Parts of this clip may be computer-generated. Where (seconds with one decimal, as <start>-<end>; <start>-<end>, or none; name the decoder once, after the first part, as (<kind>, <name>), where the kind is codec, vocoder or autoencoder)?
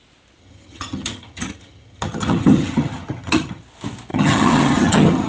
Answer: 0.4-3.6 (vocoder, HiFi-GAN); 4.1-5.3